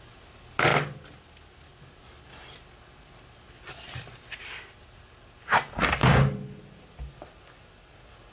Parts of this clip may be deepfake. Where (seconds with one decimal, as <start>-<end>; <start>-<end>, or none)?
none